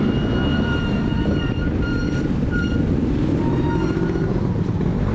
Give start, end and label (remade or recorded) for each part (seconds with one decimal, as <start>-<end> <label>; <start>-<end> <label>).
0.0-0.5 recorded; 0.5-2.9 remade; 2.9-4.3 recorded; 4.3-5.1 remade

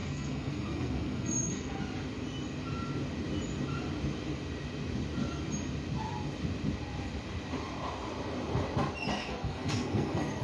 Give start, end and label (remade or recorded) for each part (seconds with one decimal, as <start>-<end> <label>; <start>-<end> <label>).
0.0-1.8 remade; 1.8-9.2 recorded; 9.2-10.4 remade